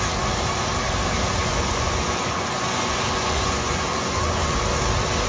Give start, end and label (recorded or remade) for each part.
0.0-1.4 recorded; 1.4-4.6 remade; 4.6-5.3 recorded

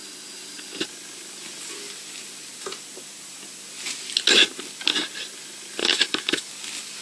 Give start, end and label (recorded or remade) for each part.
0.0-5.8 recorded; 5.8-6.5 remade; 6.5-7.0 recorded

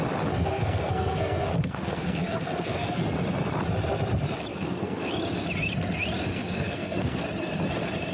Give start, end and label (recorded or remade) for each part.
0.0-0.4 recorded; 0.4-3.0 remade; 3.0-4.5 recorded; 4.5-5.1 remade; 5.1-6.3 recorded; 6.3-7.2 remade; 7.2-8.1 recorded

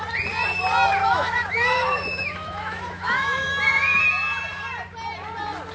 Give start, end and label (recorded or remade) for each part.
0.0-1.0 recorded; 1.0-3.5 remade; 3.5-5.7 recorded

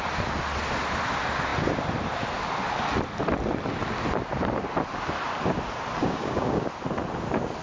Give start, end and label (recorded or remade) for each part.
0.0-6.0 recorded; 6.0-6.7 remade; 6.7-7.6 recorded

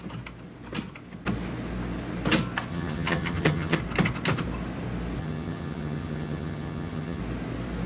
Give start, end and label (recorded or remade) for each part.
0.0-2.7 recorded; 2.7-3.8 remade; 3.8-5.2 recorded; 5.2-7.2 remade; 7.2-7.9 recorded

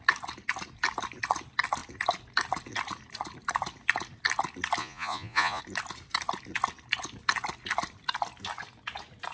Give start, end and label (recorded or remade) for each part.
0.0-4.8 recorded; 4.8-5.6 remade; 5.6-9.3 recorded

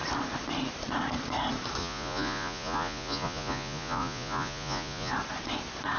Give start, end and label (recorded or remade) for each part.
0.0-1.8 recorded; 1.8-5.1 remade; 5.1-6.0 recorded